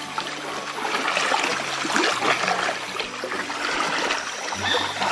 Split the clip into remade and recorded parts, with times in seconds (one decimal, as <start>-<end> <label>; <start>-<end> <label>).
0.0-5.1 recorded